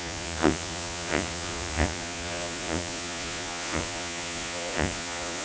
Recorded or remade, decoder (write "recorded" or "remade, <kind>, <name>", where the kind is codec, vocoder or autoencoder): remade, vocoder, Vocos